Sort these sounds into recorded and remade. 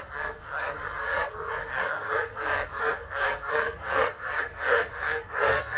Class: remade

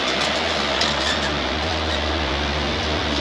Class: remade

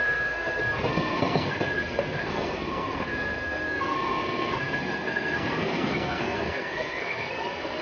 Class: remade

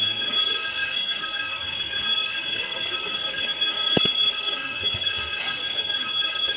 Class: remade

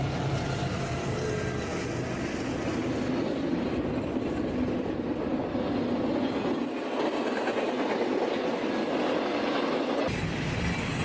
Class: recorded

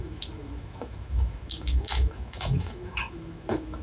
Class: remade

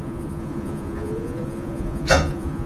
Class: remade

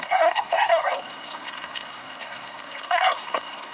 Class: remade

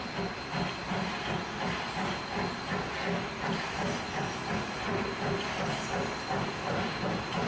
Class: recorded